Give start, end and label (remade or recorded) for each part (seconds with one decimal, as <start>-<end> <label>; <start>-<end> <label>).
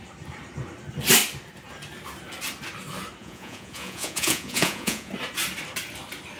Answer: 0.0-3.2 recorded; 3.2-5.1 remade; 5.1-6.4 recorded